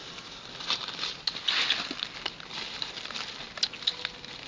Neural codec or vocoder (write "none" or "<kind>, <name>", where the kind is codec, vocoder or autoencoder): none